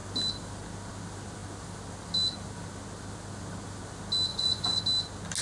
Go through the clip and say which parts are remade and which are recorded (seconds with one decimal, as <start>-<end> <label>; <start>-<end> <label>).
0.0-4.3 recorded; 4.3-4.8 remade; 4.8-5.4 recorded